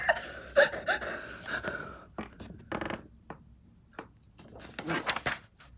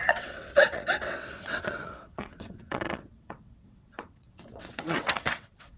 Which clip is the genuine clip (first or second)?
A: first